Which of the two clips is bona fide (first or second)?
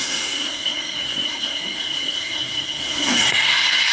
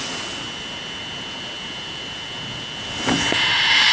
second